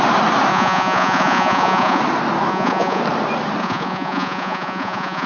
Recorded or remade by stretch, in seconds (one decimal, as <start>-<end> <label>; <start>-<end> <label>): 0.0-0.5 recorded; 0.5-2.0 remade; 2.0-2.5 recorded; 2.5-3.0 remade; 3.0-3.6 recorded; 3.6-5.3 remade

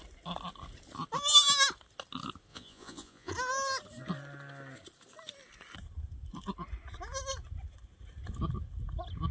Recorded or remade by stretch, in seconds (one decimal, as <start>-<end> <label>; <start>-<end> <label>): 0.0-2.5 recorded; 2.5-3.3 remade; 3.3-9.3 recorded

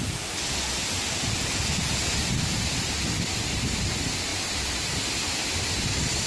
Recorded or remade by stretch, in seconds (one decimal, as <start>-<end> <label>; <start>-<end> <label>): 0.0-6.3 recorded

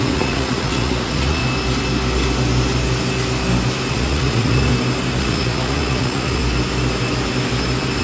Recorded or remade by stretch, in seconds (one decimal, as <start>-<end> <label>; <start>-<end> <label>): 0.0-1.4 remade; 1.4-3.9 recorded; 3.9-4.7 remade; 4.7-5.2 recorded; 5.2-6.4 remade; 6.4-8.0 recorded

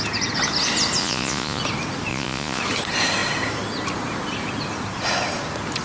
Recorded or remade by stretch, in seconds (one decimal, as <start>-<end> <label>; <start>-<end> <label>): 0.0-1.0 recorded; 1.0-1.6 remade; 1.6-2.1 recorded; 2.1-2.6 remade; 2.6-5.8 recorded

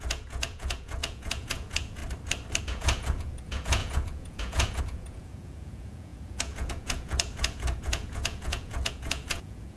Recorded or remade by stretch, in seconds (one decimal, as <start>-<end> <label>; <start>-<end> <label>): 0.0-2.0 remade; 2.0-2.6 recorded; 2.6-9.8 remade

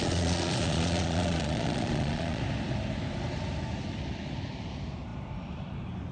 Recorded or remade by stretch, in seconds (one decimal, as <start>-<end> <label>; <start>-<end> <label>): 0.0-2.4 remade; 2.4-6.1 recorded